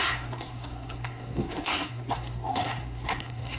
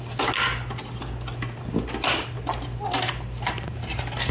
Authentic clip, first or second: second